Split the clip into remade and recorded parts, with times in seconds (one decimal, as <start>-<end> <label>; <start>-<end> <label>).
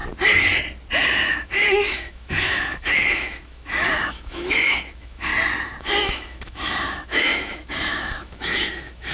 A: 0.0-1.3 recorded; 1.3-5.3 remade; 5.3-5.8 recorded; 5.8-9.1 remade